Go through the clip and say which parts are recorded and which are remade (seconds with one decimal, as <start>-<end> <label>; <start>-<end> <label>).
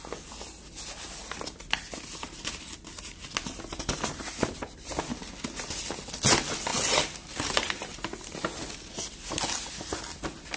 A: 0.0-10.6 recorded